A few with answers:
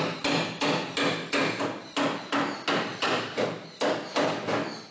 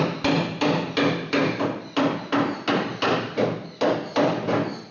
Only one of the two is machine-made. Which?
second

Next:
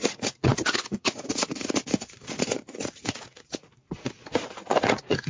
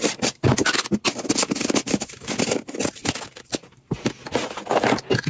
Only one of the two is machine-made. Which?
first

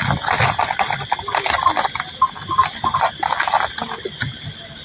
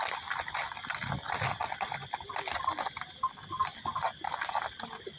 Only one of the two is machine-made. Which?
second